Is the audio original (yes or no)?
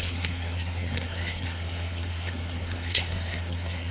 no